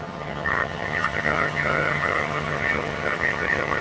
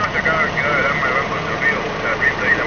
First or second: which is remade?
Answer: first